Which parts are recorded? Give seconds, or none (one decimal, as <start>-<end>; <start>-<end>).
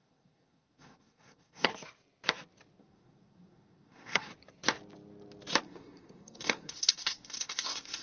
1.7-2.8; 4.3-5.6